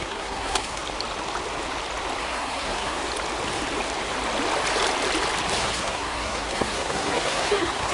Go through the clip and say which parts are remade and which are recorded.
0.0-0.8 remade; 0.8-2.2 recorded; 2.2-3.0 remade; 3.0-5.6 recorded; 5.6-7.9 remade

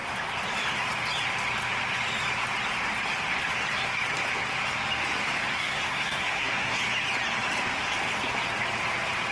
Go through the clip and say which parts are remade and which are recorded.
0.0-5.5 recorded; 5.5-6.8 remade; 6.8-9.3 recorded

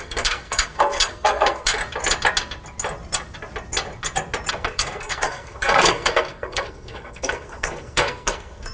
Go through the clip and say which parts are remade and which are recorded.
0.0-1.8 remade; 1.8-4.5 recorded; 4.5-8.7 remade